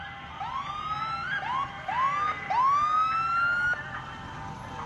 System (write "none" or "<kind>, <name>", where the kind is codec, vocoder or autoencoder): none